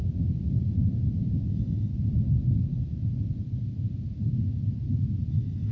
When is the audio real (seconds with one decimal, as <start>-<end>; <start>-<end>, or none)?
0.0-1.5; 1.9-5.3